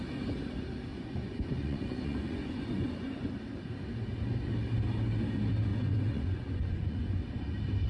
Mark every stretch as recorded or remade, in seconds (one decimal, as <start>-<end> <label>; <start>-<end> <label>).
0.0-0.9 recorded; 0.9-3.3 remade; 3.3-5.7 recorded; 5.7-7.2 remade; 7.2-7.9 recorded